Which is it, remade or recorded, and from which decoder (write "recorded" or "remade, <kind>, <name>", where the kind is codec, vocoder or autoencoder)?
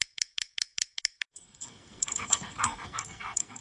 remade, codec, SNAC